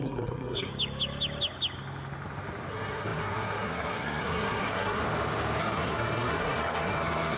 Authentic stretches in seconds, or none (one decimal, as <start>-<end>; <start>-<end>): 0.7-2.7; 5.0-5.6